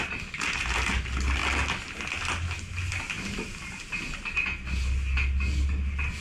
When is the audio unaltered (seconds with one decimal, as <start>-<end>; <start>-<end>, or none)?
0.0-6.2